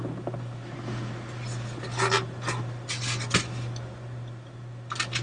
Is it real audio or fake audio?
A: real